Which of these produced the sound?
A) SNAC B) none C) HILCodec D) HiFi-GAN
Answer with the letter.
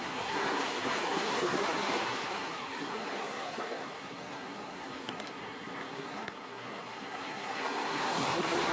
A